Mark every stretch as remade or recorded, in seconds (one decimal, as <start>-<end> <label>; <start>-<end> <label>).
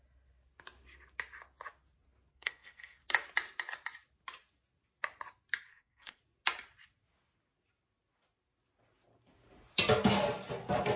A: 0.0-2.3 recorded; 2.3-3.0 remade; 3.0-5.7 recorded; 5.7-6.2 remade; 6.2-11.0 recorded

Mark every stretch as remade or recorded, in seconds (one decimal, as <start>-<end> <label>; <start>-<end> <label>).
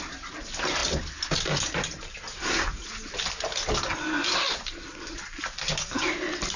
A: 0.0-6.6 recorded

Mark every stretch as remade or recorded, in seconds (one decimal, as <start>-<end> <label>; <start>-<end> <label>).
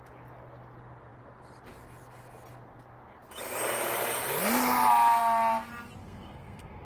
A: 0.0-6.0 recorded; 6.0-6.8 remade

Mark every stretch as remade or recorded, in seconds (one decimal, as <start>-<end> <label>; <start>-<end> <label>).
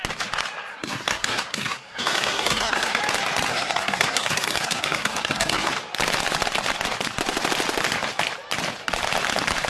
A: 0.0-0.7 recorded; 0.7-3.0 remade; 3.0-3.5 recorded; 3.5-5.7 remade; 5.7-9.7 recorded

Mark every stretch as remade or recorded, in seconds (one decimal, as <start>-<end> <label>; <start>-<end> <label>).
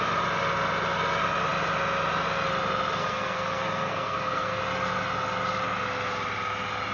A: 0.0-3.0 recorded; 3.0-4.6 remade; 4.6-6.9 recorded